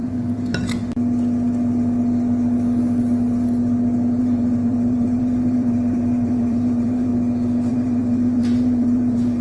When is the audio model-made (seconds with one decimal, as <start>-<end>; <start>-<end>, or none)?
0.0-0.8; 4.2-7.1; 7.7-9.4